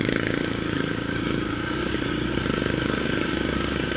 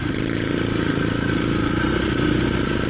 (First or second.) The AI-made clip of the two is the first